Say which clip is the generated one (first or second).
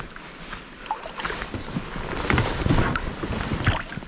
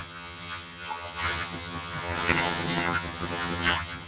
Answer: second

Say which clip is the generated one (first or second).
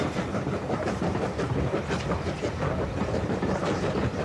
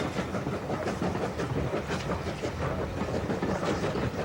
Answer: first